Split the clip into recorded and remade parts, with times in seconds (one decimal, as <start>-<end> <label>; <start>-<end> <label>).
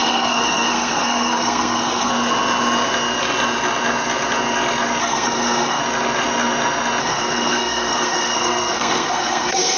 0.0-2.1 remade; 2.1-5.0 recorded; 5.0-5.8 remade; 5.8-7.0 recorded; 7.0-9.8 remade